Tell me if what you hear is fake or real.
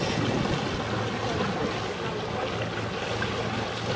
real